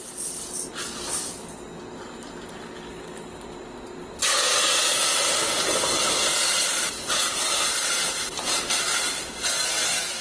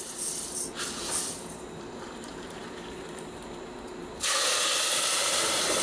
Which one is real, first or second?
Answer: first